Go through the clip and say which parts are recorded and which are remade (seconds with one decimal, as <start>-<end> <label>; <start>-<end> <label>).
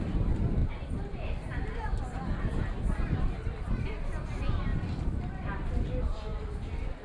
0.0-7.0 recorded